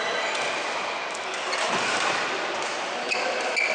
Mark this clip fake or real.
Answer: real